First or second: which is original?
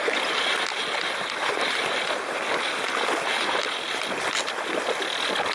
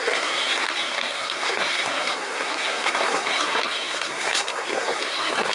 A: first